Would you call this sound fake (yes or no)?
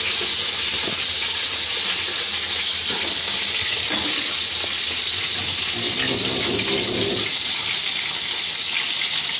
no